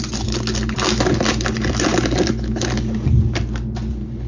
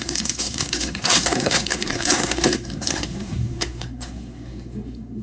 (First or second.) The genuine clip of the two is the first